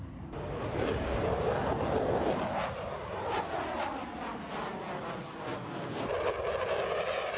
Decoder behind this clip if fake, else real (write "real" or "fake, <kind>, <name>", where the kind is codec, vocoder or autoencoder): real